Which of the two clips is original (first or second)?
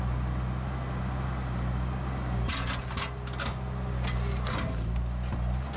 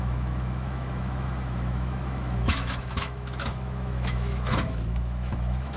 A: first